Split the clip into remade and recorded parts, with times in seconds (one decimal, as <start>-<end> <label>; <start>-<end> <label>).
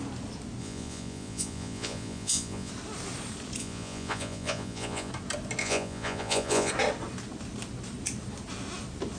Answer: 0.0-0.6 recorded; 0.6-2.7 remade; 2.7-3.6 recorded; 3.6-5.1 remade; 5.1-5.6 recorded; 5.6-6.7 remade; 6.7-9.2 recorded